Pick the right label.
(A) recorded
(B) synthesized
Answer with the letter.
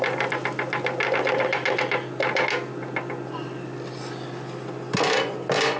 A